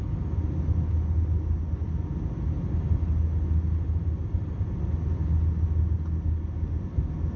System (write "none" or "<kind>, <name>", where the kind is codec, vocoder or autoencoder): none